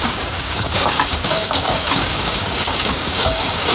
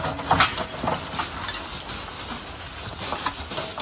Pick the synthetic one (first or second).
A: first